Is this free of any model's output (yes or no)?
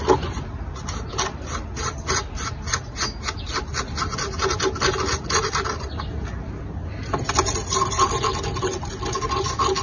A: yes